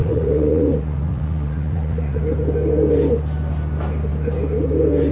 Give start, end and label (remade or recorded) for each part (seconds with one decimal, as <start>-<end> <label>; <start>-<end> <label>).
0.0-2.2 remade; 2.2-5.1 recorded